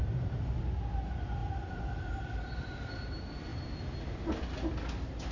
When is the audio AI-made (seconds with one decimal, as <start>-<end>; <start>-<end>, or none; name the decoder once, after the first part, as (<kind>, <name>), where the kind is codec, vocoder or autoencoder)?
0.0-0.6 (vocoder, BigVGAN v2); 1.4-2.5